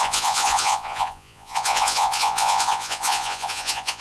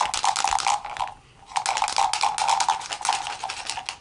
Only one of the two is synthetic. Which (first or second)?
first